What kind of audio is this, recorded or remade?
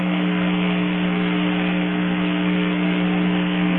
remade